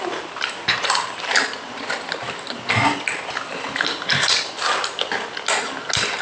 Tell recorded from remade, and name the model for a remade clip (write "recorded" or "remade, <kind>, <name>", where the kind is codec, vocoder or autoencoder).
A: recorded